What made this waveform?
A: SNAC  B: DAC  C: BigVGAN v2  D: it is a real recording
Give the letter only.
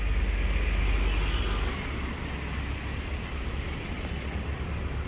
D